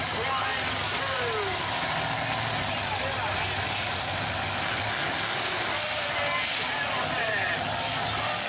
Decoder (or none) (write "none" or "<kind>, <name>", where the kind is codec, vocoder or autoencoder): none